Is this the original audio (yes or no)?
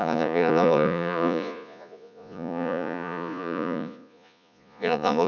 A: no